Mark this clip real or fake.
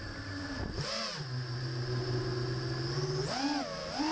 real